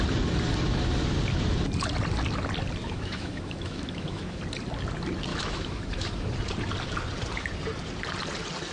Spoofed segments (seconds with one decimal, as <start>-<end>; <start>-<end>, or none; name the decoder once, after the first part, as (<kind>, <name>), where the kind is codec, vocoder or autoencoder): 2.8-4.4 (autoencoder, DAC-VAE); 5.3-6.3